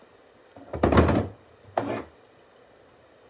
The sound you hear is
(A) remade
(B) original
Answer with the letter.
B